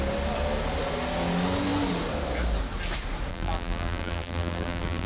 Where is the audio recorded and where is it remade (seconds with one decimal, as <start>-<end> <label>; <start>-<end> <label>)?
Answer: 0.0-3.3 recorded; 3.3-5.1 remade